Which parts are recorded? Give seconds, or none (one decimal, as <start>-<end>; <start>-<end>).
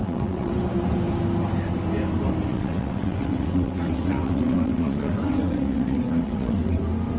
0.5-2.5; 6.8-7.2